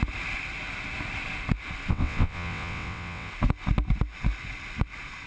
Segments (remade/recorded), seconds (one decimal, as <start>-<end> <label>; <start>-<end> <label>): 0.0-1.9 recorded; 1.9-3.3 remade; 3.3-5.3 recorded